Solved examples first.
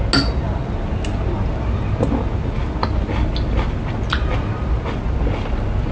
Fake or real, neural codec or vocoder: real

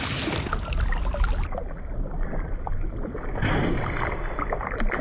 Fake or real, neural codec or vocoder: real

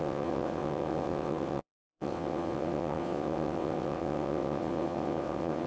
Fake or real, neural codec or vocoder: fake, vocoder, WaveNeXt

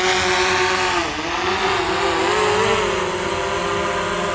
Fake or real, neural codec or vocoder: real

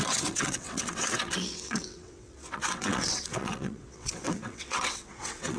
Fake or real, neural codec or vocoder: fake, vocoder, WaveNeXt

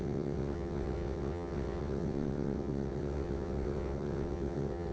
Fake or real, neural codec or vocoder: fake, vocoder, WaveNeXt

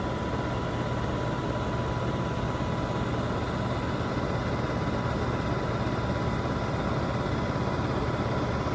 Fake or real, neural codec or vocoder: real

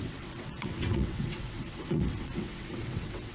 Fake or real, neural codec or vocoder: fake, vocoder, WaveNeXt